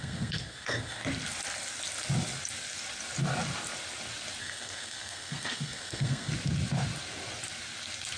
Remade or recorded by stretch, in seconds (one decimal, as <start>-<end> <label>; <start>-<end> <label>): 0.0-1.0 remade; 1.0-4.4 recorded; 4.4-6.3 remade; 6.3-8.2 recorded

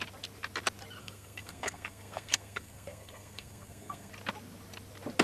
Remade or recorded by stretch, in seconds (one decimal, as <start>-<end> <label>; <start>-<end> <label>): 0.0-1.0 recorded; 1.0-4.1 remade; 4.1-5.2 recorded

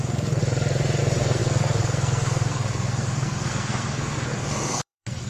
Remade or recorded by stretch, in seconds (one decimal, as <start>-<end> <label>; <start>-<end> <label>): 0.0-0.4 remade; 0.4-1.0 recorded; 1.0-5.3 remade

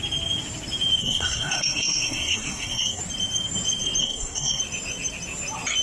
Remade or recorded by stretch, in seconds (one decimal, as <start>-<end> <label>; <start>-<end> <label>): 0.0-1.0 recorded; 1.0-3.0 remade; 3.0-4.0 recorded; 4.0-4.6 remade; 4.6-5.8 recorded

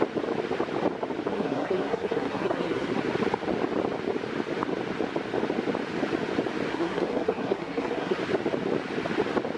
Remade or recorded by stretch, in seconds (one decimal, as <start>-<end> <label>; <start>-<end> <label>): 0.0-1.3 recorded; 1.3-2.9 remade; 2.9-6.7 recorded; 6.7-8.2 remade; 8.2-9.6 recorded

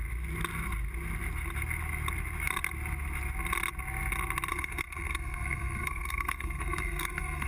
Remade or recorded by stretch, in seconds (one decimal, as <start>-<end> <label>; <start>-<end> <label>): 0.0-4.5 recorded; 4.5-7.5 remade